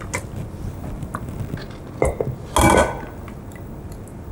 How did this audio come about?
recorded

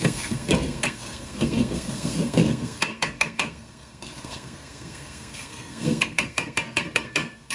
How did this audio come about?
remade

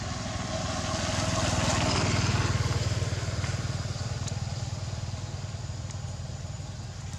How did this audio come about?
recorded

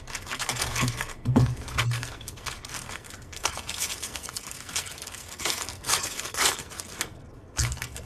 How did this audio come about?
remade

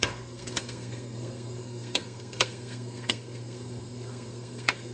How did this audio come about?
remade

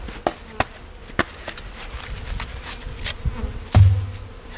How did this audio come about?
recorded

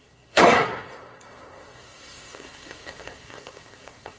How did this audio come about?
remade